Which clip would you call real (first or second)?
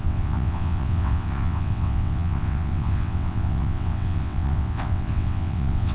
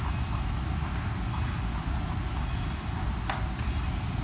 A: second